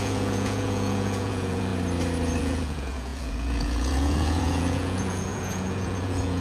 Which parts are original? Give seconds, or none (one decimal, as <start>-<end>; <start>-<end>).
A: 1.7-2.4